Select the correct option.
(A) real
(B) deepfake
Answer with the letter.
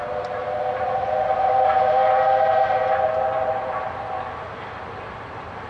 A